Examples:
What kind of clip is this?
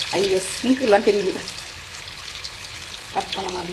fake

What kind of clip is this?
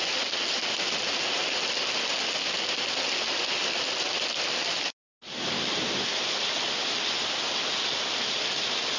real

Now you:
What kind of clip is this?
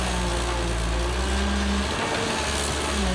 real